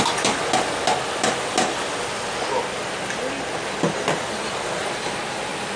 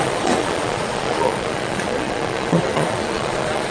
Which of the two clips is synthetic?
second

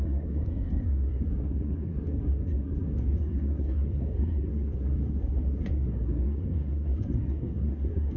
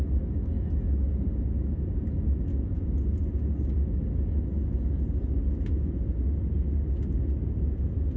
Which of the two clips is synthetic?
first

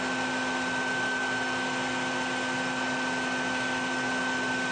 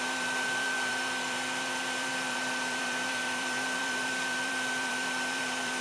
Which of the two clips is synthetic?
second